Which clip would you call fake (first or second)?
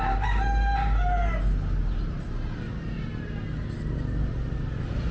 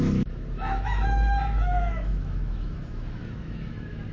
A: second